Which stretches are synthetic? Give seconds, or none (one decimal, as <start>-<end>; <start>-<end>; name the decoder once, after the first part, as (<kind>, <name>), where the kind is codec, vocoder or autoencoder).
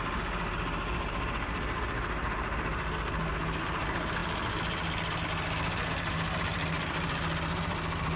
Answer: none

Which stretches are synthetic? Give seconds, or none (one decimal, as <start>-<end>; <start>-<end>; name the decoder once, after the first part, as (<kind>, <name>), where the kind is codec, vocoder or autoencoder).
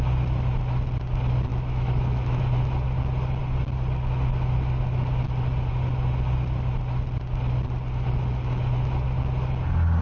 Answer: 1.5-2.4 (autoencoder, DAC-VAE)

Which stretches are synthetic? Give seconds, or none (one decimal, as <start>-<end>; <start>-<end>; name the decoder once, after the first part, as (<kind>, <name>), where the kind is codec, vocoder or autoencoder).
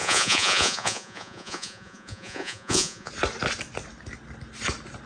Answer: 0.0-3.1 (vocoder, Vocos)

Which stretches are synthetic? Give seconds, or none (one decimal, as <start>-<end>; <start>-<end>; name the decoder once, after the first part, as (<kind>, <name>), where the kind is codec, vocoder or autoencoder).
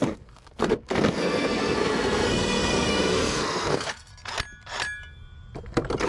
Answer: 0.0-4.1 (codec, SNAC)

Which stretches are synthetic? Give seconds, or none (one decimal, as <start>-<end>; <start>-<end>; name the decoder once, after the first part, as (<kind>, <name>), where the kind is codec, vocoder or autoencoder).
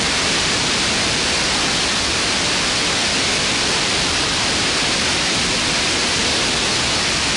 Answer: none